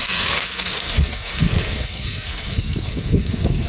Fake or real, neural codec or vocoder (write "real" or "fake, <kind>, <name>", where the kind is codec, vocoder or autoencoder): fake, codec, SNAC